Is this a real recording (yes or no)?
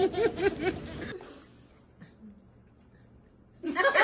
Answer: yes